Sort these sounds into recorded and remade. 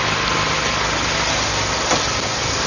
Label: recorded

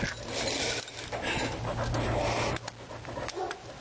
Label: recorded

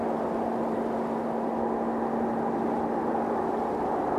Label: recorded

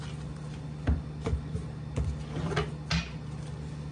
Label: recorded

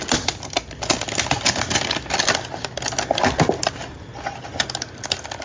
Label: recorded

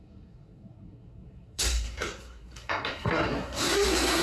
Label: remade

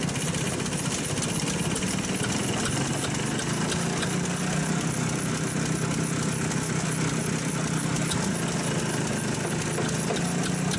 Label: recorded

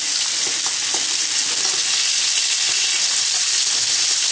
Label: recorded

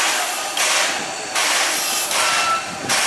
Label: recorded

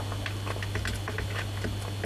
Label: recorded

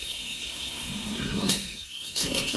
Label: remade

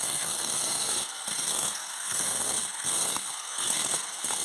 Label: remade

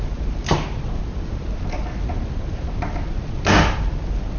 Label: recorded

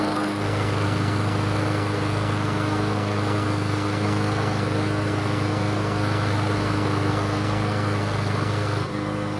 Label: remade